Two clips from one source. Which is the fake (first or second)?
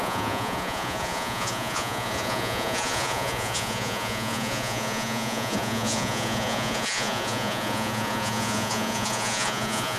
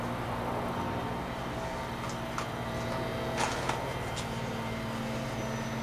first